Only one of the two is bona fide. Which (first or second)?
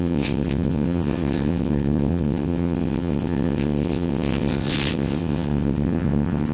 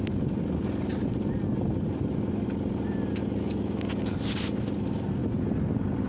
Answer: second